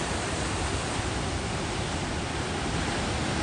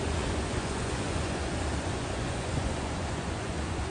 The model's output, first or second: second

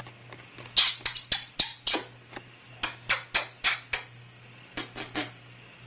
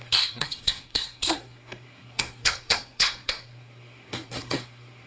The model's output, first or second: second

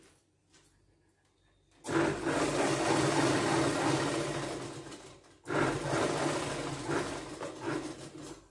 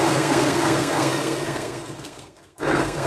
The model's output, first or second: second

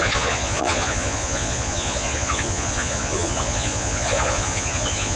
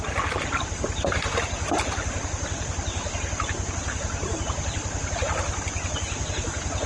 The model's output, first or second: first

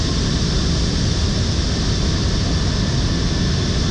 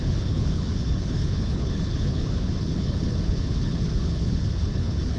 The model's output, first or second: second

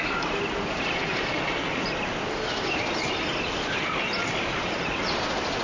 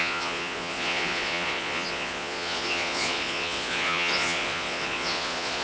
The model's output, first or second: second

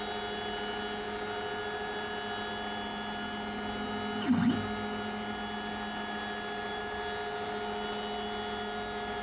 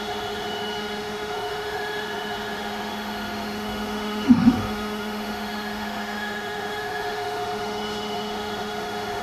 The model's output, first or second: second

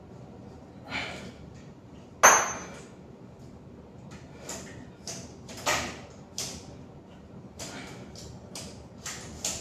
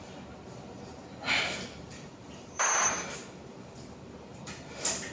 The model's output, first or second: second